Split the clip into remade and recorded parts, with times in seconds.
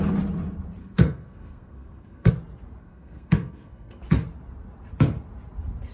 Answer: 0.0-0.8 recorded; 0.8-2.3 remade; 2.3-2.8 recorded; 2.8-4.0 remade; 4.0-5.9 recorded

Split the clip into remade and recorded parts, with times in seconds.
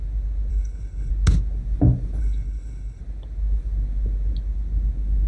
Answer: 0.0-0.5 recorded; 0.5-1.1 remade; 1.1-2.2 recorded; 2.2-3.0 remade; 3.0-5.3 recorded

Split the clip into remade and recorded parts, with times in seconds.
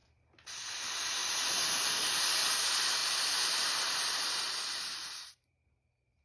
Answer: 0.0-0.7 recorded; 0.7-6.2 remade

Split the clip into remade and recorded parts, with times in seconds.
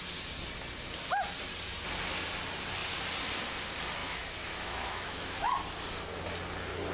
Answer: 0.0-4.0 recorded; 4.0-5.5 remade; 5.5-6.9 recorded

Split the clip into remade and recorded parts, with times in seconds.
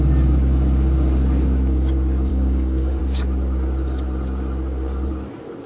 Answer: 0.0-2.3 recorded; 2.3-3.0 remade; 3.0-5.7 recorded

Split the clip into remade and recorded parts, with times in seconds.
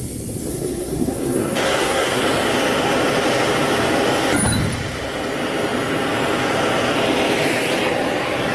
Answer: 0.0-0.5 recorded; 0.5-2.2 remade; 2.2-8.5 recorded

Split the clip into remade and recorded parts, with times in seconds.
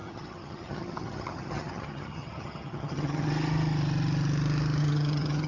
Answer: 0.0-3.3 remade; 3.3-4.8 recorded; 4.8-5.5 remade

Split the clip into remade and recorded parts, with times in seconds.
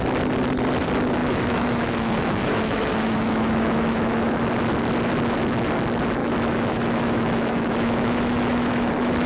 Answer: 0.0-1.2 recorded; 1.2-4.5 remade; 4.5-6.2 recorded; 6.2-9.3 remade